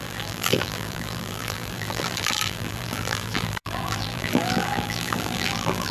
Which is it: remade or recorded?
remade